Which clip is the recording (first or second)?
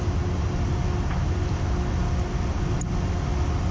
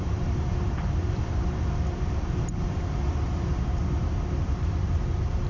first